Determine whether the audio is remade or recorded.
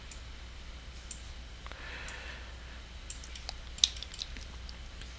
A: recorded